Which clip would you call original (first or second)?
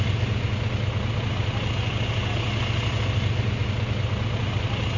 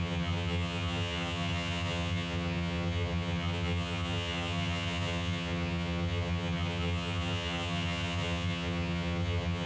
first